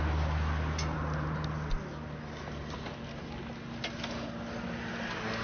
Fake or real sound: real